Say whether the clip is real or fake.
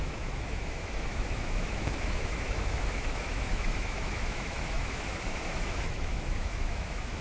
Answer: fake